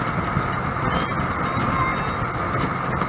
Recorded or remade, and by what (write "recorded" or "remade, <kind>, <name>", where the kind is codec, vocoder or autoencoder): recorded